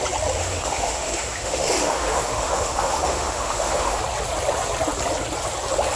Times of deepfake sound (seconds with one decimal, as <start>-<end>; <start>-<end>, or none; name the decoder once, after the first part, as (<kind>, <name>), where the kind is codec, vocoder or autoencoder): 0.4-4.0 (autoencoder, DAC-VAE)